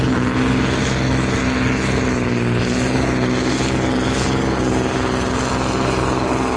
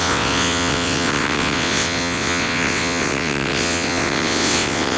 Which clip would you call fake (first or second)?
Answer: second